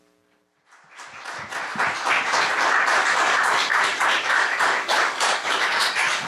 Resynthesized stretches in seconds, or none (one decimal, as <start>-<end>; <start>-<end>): 3.0-6.3